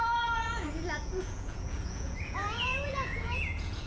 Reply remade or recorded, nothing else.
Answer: remade